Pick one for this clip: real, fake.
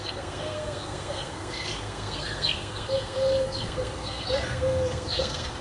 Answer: fake